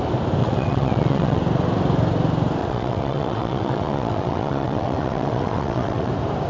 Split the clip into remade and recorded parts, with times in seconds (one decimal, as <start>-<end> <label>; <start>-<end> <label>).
0.0-0.4 recorded; 0.4-1.4 remade; 1.4-2.6 recorded; 2.6-6.1 remade; 6.1-6.5 recorded